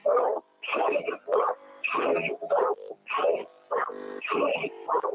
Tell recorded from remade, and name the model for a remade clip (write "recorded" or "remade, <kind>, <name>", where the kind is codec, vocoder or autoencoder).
recorded